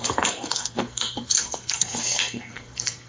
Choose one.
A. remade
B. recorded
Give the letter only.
A